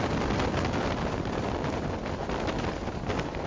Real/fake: real